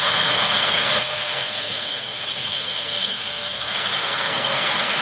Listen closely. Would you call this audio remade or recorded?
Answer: remade